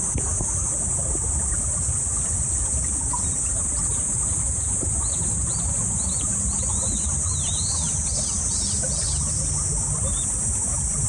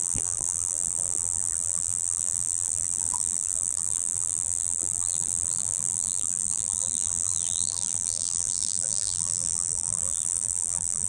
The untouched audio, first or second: first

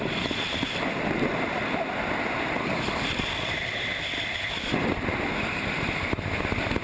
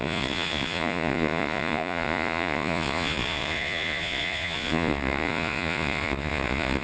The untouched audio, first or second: first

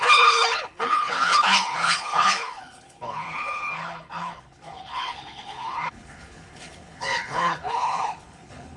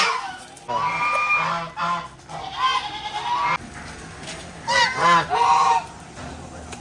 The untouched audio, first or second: second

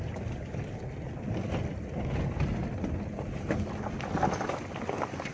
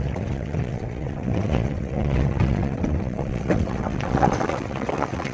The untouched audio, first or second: first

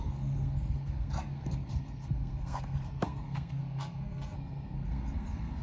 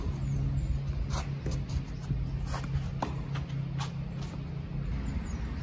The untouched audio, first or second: second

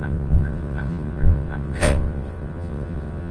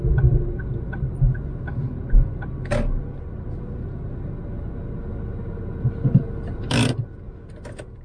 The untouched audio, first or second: second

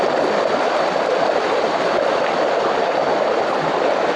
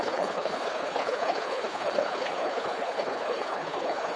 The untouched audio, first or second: first